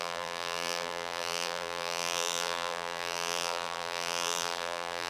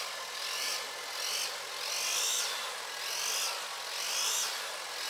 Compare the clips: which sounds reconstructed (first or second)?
first